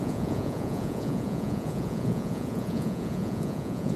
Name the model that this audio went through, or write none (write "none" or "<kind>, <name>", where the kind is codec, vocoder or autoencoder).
vocoder, Vocos